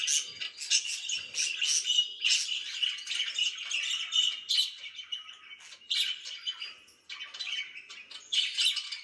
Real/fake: real